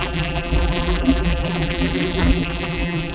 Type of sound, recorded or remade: remade